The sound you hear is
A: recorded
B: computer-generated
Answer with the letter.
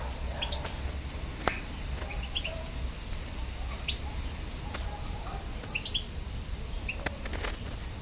A